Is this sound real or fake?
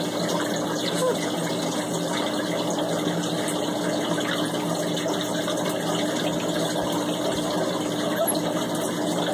real